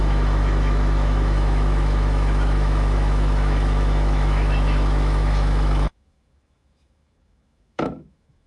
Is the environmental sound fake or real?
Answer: fake